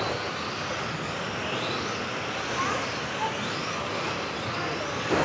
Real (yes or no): no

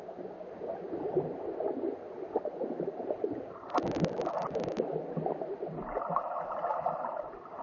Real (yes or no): yes